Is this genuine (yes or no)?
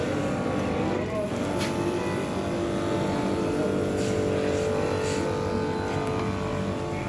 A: yes